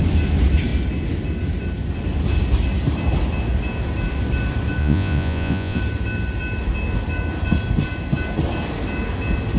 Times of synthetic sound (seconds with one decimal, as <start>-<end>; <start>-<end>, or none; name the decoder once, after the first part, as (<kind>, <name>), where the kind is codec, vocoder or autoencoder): 4.8-5.8 (vocoder, Vocos)